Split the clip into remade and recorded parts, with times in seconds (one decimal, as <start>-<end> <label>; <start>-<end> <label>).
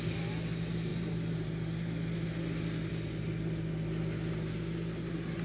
0.0-5.4 recorded